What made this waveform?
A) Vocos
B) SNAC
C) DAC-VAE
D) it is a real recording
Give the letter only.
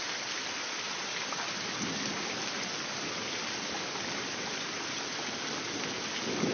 D